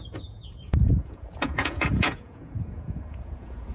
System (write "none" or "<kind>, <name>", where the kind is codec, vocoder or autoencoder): vocoder, Vocos